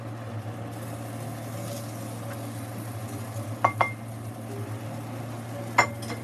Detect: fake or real real